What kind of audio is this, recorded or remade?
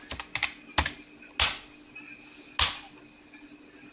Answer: recorded